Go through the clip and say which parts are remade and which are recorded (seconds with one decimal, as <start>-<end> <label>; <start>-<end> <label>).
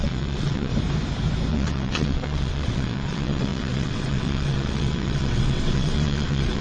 0.0-0.7 remade; 0.7-1.5 recorded; 1.5-6.6 remade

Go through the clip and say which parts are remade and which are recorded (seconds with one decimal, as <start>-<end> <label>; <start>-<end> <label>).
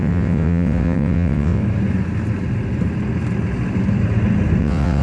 0.0-1.6 remade; 1.6-4.6 recorded; 4.6-5.0 remade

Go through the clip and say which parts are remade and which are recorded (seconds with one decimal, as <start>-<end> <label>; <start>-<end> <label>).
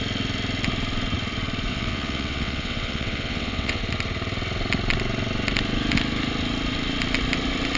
0.0-1.7 recorded; 1.7-3.8 remade; 3.8-7.8 recorded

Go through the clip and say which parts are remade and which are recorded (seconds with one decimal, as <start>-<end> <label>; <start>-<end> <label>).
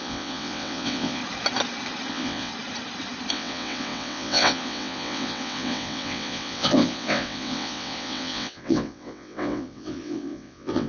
0.0-1.2 remade; 1.2-2.1 recorded; 2.1-2.5 remade; 2.5-3.3 recorded; 3.3-10.9 remade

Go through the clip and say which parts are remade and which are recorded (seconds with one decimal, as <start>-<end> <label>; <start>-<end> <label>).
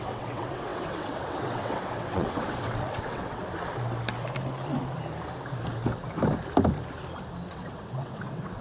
0.0-3.4 remade; 3.4-7.5 recorded; 7.5-8.6 remade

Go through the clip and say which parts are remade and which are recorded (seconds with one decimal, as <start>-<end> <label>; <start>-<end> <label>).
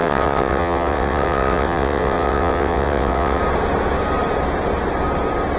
0.0-3.4 remade; 3.4-5.6 recorded